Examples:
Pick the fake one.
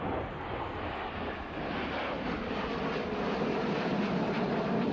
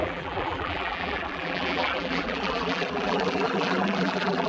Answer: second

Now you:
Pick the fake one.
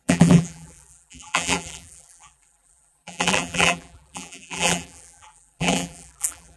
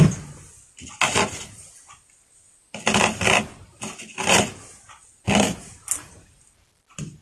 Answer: first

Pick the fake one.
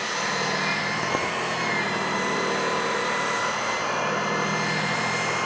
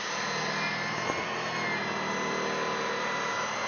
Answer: first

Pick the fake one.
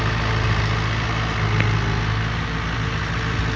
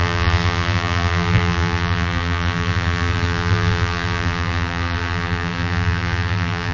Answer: second